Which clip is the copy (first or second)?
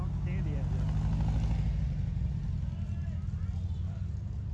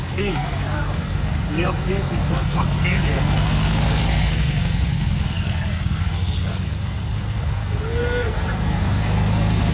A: second